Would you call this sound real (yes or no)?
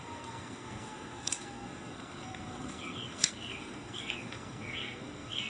no